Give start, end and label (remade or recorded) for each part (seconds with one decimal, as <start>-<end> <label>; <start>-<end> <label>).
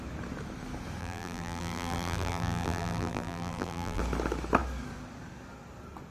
0.0-1.0 recorded; 1.0-4.0 remade; 4.0-6.1 recorded